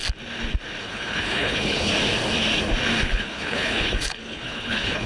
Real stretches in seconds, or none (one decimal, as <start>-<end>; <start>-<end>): 0.0-0.8; 1.9-3.0